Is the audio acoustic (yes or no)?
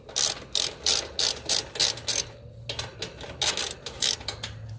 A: yes